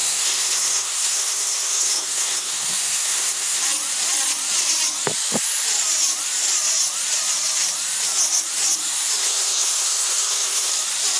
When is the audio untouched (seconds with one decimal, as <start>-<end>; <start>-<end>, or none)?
3.6-9.2; 10.7-11.2